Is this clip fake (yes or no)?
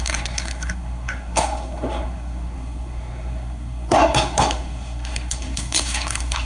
yes